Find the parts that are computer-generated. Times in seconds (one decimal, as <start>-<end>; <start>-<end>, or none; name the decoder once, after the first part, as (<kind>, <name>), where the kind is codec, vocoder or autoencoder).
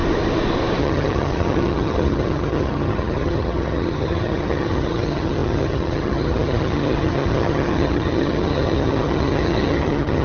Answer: 0.8-10.2 (vocoder, HiFi-GAN)